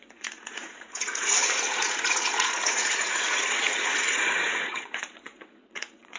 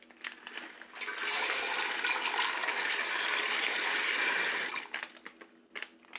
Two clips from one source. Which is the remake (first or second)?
first